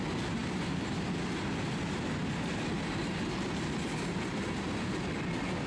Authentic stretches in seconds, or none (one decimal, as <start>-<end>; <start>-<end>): 0.0-5.7

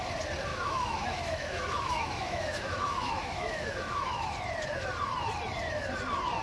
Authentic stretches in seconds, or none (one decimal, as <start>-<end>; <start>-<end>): 0.0-0.5; 4.3-6.4

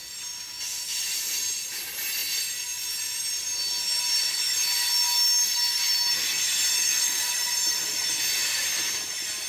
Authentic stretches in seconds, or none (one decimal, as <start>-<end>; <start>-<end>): 0.0-6.7; 7.2-9.5

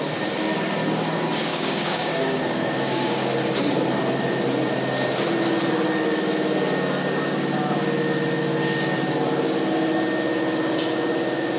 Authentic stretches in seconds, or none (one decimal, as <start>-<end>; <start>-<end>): 0.0-1.5; 3.3-11.6

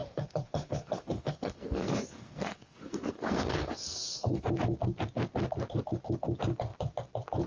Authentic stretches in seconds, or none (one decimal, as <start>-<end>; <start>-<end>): 4.5-7.5